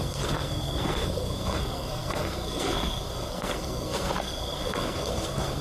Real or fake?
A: fake